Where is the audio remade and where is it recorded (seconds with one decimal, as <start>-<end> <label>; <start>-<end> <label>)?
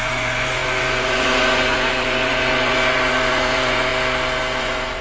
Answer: 0.0-3.9 remade; 3.9-4.6 recorded; 4.6-5.0 remade